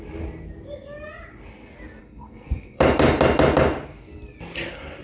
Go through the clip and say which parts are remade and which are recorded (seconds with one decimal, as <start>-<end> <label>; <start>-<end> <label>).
0.0-2.0 recorded; 2.0-2.8 remade; 2.8-5.0 recorded